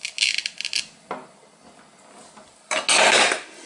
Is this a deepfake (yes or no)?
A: no